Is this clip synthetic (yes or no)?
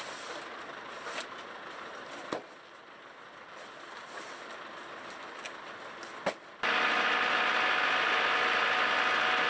no